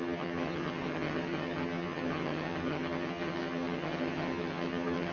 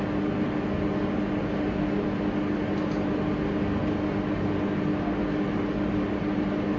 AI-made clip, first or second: first